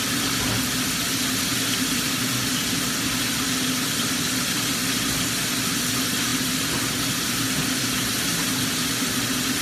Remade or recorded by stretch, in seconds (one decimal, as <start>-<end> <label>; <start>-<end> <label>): 0.0-9.6 recorded